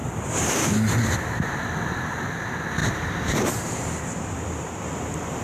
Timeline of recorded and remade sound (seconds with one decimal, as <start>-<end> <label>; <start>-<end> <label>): 0.0-1.5 remade; 1.5-2.8 recorded; 2.8-4.2 remade; 4.2-5.4 recorded